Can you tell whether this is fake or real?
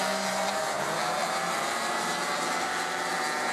fake